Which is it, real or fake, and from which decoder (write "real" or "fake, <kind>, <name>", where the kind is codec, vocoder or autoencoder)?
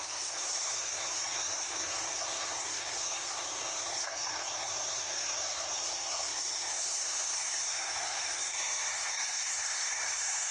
fake, codec, SNAC